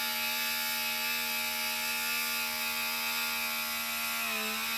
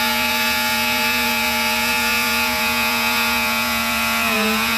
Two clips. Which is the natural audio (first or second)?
first